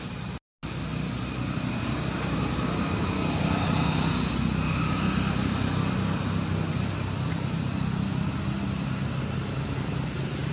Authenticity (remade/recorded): recorded